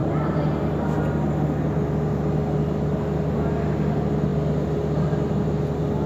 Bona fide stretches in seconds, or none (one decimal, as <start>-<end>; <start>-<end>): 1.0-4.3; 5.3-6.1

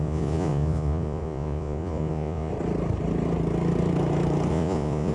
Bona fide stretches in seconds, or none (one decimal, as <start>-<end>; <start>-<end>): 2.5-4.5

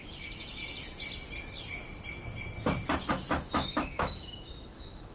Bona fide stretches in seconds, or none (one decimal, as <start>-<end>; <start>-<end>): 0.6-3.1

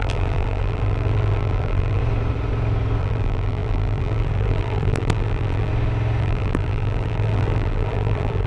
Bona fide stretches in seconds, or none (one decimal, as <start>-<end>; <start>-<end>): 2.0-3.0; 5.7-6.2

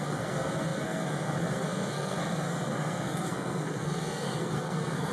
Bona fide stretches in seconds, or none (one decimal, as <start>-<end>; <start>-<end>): none

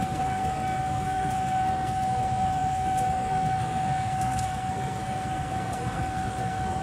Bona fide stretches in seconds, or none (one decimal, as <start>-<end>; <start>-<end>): none

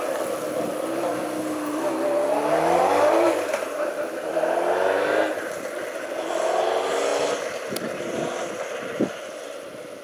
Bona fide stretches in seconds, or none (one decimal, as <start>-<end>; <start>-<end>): 0.0-7.1; 9.3-10.0